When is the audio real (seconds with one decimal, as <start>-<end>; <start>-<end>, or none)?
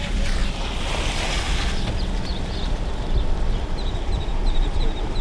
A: 0.4-3.5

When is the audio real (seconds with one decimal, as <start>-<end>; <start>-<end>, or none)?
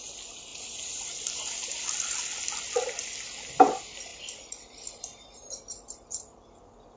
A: 0.0-0.5; 1.5-4.1; 5.6-7.0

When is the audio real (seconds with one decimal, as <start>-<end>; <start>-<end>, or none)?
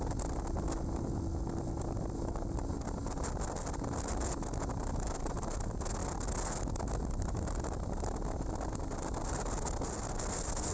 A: 0.0-10.7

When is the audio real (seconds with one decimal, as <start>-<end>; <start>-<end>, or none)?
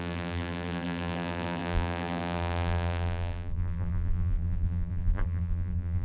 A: none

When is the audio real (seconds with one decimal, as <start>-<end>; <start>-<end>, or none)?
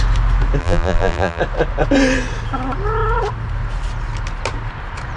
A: 0.0-0.6; 1.4-5.2